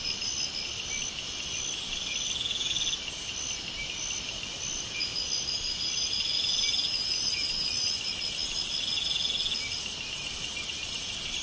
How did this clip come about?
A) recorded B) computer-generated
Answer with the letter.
A